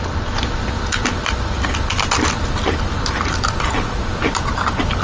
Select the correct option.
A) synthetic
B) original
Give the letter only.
B